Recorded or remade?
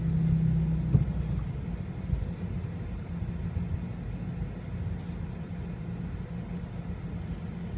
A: recorded